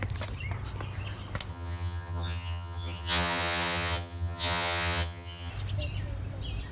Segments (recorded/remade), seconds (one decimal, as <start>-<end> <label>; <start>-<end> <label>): 0.0-1.5 recorded; 1.5-5.5 remade; 5.5-6.7 recorded

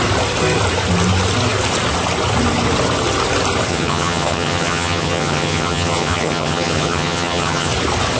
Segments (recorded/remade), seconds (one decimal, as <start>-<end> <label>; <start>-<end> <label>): 0.0-3.7 recorded; 3.7-7.7 remade; 7.7-8.2 recorded

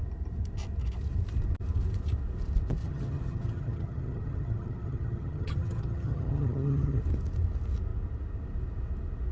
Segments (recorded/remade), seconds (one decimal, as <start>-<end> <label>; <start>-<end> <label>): 0.0-2.8 recorded; 2.8-7.0 remade; 7.0-9.3 recorded

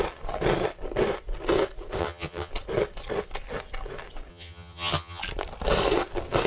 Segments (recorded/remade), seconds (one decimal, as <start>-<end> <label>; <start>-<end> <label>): 0.0-2.0 recorded; 2.0-2.5 remade; 2.5-4.3 recorded; 4.3-5.2 remade; 5.2-6.5 recorded